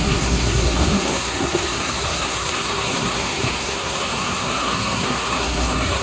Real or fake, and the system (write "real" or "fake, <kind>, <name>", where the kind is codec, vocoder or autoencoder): fake, codec, SNAC